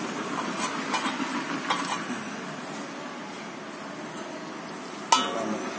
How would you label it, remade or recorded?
recorded